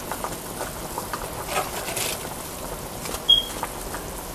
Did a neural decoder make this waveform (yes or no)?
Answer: no